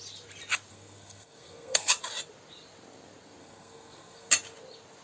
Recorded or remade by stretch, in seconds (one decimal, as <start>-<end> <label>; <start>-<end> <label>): 0.0-0.7 recorded; 0.7-1.9 remade; 1.9-3.4 recorded; 3.4-4.3 remade; 4.3-5.0 recorded